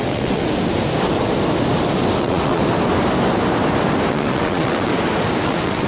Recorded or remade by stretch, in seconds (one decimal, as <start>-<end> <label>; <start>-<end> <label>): 0.0-0.4 remade; 0.4-2.2 recorded; 2.2-2.6 remade; 2.6-4.1 recorded; 4.1-4.9 remade; 4.9-5.4 recorded; 5.4-5.9 remade

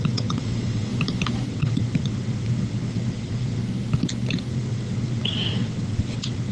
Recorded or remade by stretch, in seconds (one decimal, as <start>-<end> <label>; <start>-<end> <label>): 0.0-0.9 remade; 0.9-1.5 recorded; 1.5-3.6 remade; 3.6-4.5 recorded; 4.5-6.5 remade